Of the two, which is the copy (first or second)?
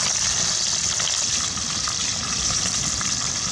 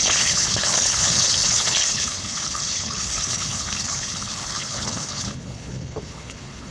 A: second